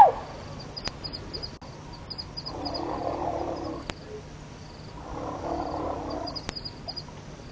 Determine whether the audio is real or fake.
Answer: real